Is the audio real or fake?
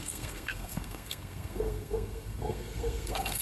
fake